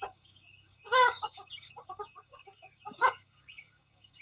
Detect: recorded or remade remade